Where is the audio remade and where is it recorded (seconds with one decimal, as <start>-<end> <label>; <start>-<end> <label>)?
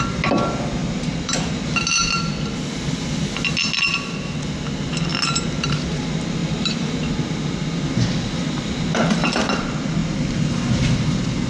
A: 0.0-0.8 recorded; 0.8-1.6 remade; 1.6-6.4 recorded; 6.4-7.1 remade; 7.1-11.5 recorded